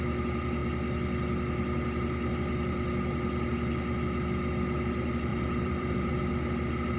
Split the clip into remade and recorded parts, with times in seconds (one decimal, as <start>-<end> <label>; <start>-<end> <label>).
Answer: 0.0-5.3 recorded; 5.3-6.2 remade; 6.2-7.0 recorded